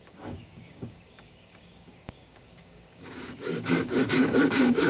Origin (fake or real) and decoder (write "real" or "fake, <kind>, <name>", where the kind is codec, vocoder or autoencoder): fake, codec, DAC